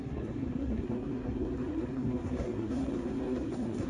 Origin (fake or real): fake